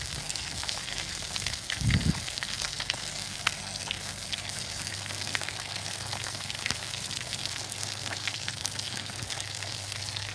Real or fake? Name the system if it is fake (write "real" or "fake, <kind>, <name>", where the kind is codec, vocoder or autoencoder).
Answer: fake, codec, SNAC